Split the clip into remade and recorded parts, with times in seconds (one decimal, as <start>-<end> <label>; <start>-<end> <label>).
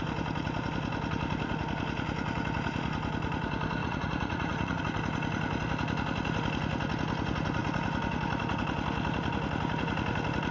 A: 0.0-3.8 recorded; 3.8-4.8 remade; 4.8-10.5 recorded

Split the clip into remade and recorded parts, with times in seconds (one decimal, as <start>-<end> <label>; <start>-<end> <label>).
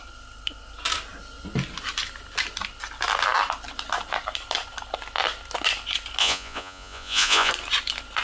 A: 0.0-6.2 recorded; 6.2-7.5 remade; 7.5-8.2 recorded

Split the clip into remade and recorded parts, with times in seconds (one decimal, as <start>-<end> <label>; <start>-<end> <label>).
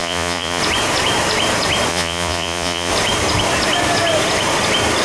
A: 0.0-0.6 remade; 0.6-1.9 recorded; 1.9-2.9 remade; 2.9-5.0 recorded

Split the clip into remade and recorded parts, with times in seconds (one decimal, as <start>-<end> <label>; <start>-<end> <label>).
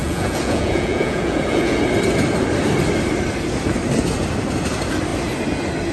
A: 0.0-1.8 remade; 1.8-5.9 recorded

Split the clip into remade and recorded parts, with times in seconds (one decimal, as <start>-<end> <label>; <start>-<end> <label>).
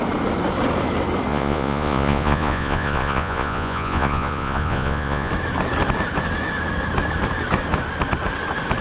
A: 0.0-1.3 recorded; 1.3-5.3 remade; 5.3-8.8 recorded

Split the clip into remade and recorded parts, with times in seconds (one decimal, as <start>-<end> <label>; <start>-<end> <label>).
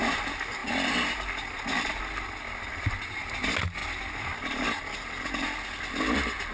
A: 0.0-6.5 recorded